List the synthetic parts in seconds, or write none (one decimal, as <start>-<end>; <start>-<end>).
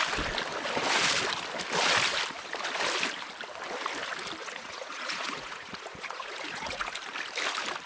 4.4-6.9